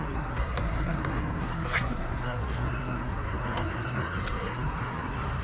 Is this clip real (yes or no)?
no